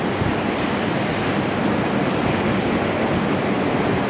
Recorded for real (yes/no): yes